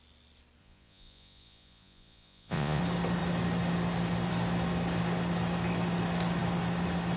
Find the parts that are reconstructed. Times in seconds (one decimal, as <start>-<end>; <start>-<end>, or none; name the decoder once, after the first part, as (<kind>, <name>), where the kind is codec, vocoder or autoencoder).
0.6-2.8 (vocoder, Vocos)